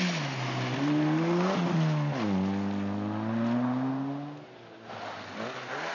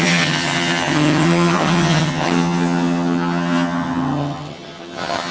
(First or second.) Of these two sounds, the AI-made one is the second